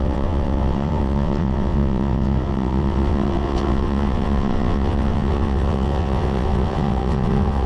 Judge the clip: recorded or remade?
remade